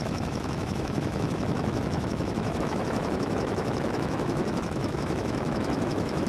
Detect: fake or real fake